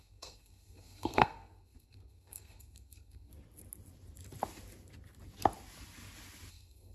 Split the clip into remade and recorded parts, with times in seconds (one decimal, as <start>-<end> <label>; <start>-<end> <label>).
0.0-3.3 remade; 3.3-6.5 recorded; 6.5-6.9 remade